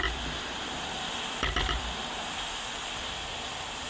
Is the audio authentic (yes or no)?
no